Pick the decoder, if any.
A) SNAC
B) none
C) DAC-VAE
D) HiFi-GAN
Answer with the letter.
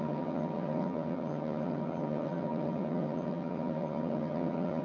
D